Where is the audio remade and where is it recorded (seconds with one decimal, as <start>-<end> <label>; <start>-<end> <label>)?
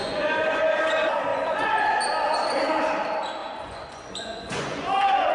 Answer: 0.0-0.6 remade; 0.6-1.3 recorded; 1.3-1.9 remade; 1.9-3.4 recorded; 3.4-5.3 remade